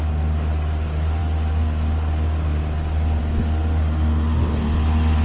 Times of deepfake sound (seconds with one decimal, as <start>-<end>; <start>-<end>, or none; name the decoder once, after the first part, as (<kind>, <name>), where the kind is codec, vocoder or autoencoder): none